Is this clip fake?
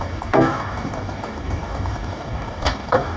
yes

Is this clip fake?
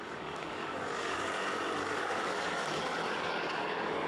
yes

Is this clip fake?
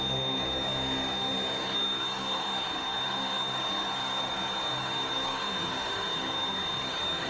yes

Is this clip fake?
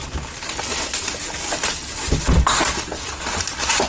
no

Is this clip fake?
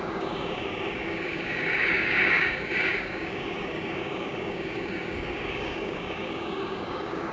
yes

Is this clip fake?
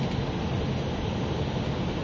no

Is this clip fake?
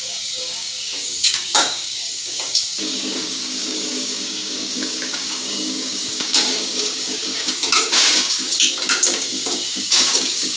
yes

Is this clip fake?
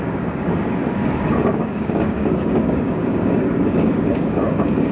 yes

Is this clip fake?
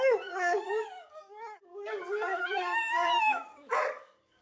yes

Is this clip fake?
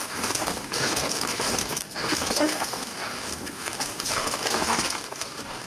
yes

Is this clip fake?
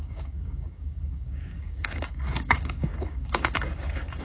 yes